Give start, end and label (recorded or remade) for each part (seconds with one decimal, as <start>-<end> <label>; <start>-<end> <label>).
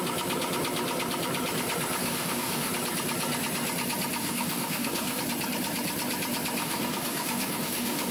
0.0-2.0 recorded; 2.0-2.7 remade; 2.7-4.2 recorded; 4.2-5.2 remade; 5.2-6.6 recorded; 6.6-8.1 remade